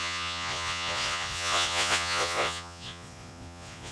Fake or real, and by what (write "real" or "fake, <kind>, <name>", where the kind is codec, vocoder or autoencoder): fake, vocoder, Vocos